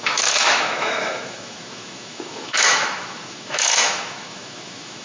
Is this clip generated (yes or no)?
yes